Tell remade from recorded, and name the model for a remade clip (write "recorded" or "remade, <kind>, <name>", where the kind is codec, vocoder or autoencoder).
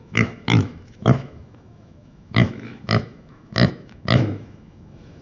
remade, autoencoder, DAC-VAE